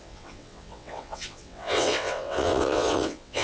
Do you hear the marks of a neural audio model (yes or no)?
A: yes